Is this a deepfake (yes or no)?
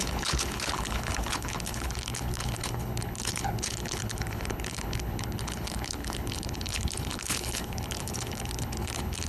yes